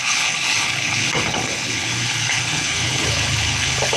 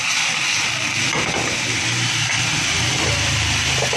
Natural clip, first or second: second